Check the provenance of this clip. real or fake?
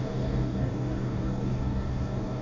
fake